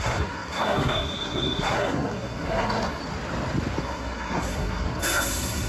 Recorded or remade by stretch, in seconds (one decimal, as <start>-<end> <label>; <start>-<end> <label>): 0.0-3.0 remade; 3.0-3.8 recorded; 3.8-5.7 remade